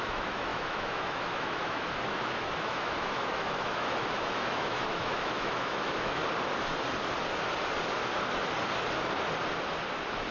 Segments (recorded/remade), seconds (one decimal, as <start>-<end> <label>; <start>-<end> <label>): 0.0-6.2 remade; 6.2-10.3 recorded